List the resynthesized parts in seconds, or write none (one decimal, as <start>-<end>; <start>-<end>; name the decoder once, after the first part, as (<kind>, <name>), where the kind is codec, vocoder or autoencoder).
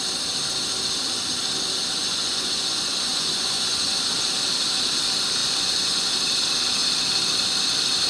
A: 2.0-4.1 (vocoder, Vocos); 5.4-6.1